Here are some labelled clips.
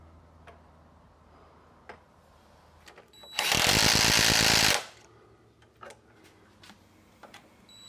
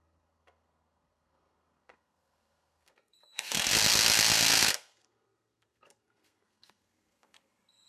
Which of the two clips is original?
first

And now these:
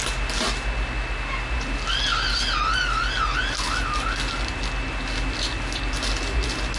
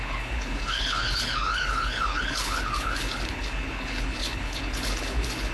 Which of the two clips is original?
first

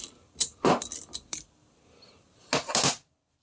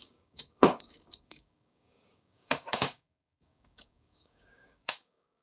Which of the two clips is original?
first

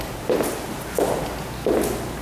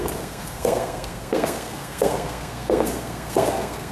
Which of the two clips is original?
first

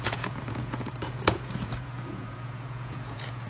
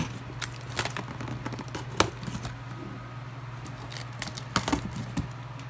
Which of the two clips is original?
second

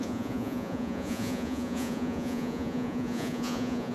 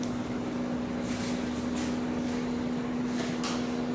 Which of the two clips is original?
second